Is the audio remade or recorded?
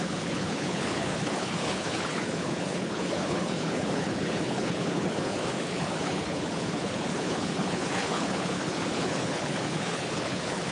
remade